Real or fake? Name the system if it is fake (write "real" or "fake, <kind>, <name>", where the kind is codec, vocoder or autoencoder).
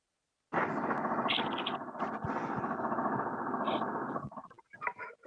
real